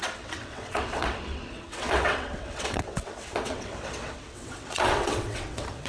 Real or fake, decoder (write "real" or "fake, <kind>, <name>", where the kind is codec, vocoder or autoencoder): fake, vocoder, WaveNeXt